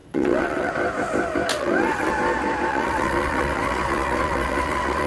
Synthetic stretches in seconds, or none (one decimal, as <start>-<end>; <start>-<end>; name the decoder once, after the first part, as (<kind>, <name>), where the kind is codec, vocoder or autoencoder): 0.0-0.7 (vocoder, WaveNeXt); 1.5-2.1; 2.7-5.1